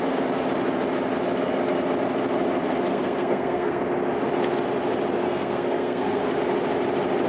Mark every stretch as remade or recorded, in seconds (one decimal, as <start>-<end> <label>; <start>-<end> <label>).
0.0-2.9 recorded; 2.9-3.8 remade; 3.8-5.2 recorded; 5.2-6.2 remade; 6.2-7.3 recorded